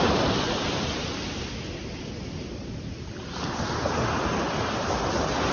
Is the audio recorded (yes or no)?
yes